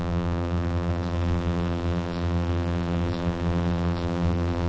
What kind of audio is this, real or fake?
fake